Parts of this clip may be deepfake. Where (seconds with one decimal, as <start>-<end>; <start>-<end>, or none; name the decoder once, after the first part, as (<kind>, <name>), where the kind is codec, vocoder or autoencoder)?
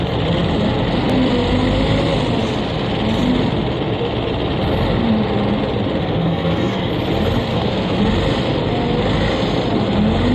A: 6.0-6.9 (codec, SNAC); 7.5-8.0